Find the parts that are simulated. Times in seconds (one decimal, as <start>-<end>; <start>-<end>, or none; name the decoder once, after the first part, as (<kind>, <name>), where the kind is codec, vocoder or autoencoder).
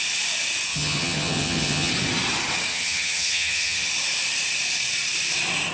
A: 0.7-1.9 (vocoder, HiFi-GAN); 2.7-3.9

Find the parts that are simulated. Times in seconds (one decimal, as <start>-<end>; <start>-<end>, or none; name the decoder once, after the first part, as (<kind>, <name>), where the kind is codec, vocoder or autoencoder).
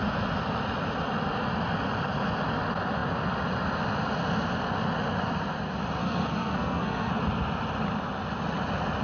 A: 6.0-7.1 (codec, SNAC)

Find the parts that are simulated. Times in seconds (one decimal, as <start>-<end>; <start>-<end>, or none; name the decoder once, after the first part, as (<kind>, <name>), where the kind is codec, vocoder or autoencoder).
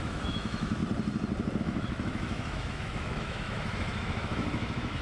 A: 0.0-0.8 (autoencoder, DAC-VAE); 1.6-5.0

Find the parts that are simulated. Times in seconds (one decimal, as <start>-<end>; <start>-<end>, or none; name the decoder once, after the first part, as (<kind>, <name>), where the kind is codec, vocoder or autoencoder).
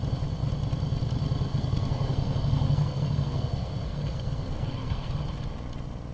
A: 1.5-5.2 (codec, SNAC)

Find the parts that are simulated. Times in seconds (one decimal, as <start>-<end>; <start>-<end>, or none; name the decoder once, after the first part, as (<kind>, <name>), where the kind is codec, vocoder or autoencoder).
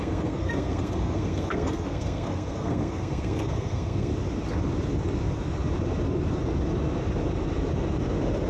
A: 0.0-4.1 (codec, SNAC)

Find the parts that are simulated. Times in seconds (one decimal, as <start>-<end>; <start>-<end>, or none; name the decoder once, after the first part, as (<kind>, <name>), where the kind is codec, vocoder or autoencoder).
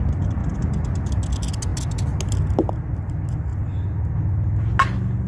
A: none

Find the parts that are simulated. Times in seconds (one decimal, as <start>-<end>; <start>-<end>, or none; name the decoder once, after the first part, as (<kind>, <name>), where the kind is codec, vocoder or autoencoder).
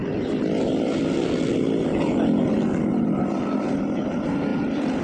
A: none